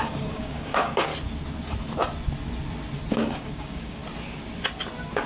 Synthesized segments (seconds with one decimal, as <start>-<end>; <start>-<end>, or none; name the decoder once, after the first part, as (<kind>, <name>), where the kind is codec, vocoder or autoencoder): 0.0-1.1 (codec, DAC); 3.1-4.0